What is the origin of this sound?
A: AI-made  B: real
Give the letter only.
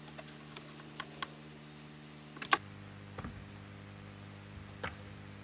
B